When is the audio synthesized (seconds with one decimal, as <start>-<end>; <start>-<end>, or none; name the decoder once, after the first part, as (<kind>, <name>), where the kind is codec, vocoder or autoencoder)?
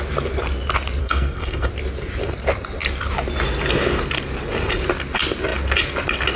1.0-1.7 (codec, SNAC)